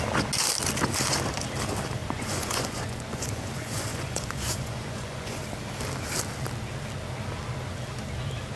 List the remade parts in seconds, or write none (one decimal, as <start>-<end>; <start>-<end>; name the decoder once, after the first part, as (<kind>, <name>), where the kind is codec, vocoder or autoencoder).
2.0-5.4 (vocoder, Vocos)